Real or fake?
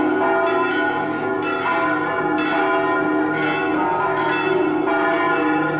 real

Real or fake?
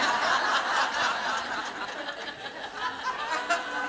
real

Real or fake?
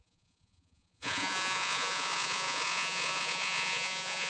fake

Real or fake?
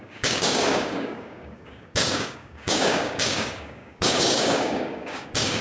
fake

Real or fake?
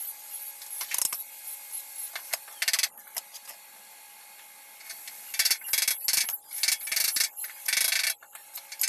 real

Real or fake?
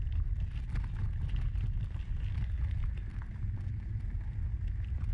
real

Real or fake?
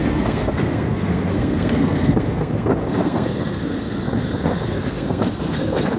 fake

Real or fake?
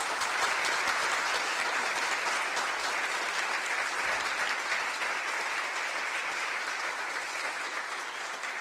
real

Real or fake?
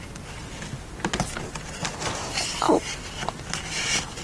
real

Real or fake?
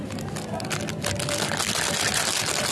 real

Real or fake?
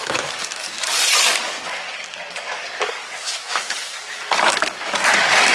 fake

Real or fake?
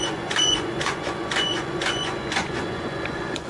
fake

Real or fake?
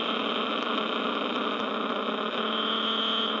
real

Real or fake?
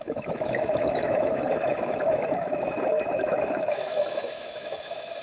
fake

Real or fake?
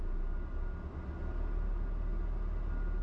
real